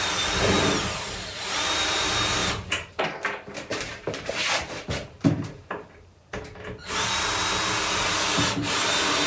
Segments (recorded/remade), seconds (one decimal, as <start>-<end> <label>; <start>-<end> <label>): 0.0-2.4 recorded; 2.4-3.0 remade; 3.0-3.7 recorded; 3.7-6.4 remade; 6.4-9.3 recorded